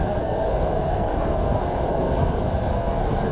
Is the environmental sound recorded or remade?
remade